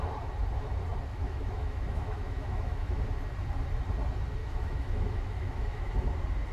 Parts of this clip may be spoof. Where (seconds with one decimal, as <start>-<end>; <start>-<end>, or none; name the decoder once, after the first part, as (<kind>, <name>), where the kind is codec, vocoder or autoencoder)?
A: 1.1-3.0 (autoencoder, DAC-VAE); 4.4-5.9